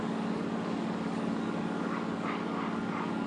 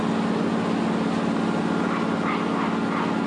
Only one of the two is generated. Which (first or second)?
first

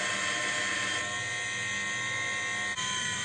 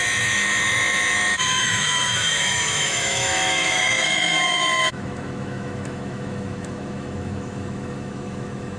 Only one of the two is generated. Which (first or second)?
second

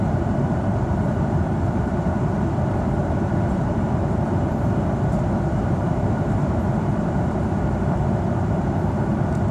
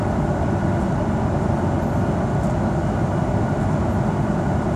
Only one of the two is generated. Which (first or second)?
first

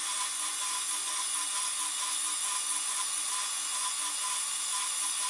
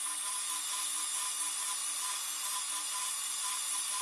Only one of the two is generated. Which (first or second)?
first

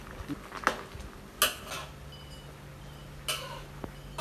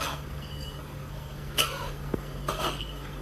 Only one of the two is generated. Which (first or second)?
second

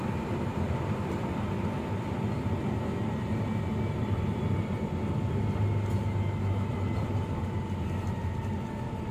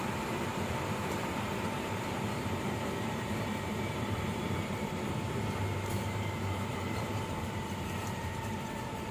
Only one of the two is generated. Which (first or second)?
second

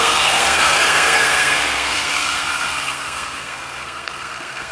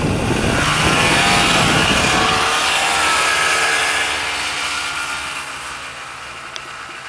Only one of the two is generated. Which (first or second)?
first